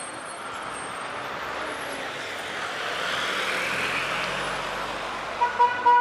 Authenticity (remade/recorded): recorded